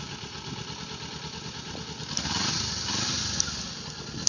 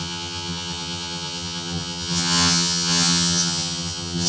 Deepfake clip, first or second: second